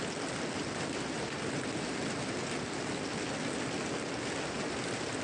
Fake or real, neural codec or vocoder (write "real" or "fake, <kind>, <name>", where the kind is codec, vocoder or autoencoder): real